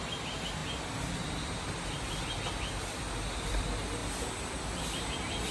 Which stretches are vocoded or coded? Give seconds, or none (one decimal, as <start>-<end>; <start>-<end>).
none